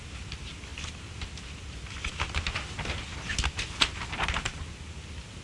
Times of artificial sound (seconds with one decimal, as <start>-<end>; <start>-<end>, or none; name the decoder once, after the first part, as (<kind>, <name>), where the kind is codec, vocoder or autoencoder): none